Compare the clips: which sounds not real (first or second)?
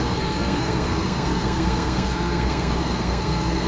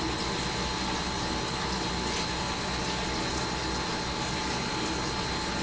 first